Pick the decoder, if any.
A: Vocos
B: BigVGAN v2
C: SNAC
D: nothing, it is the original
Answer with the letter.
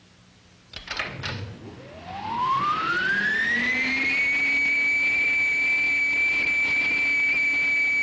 D